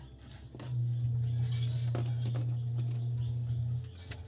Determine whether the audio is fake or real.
real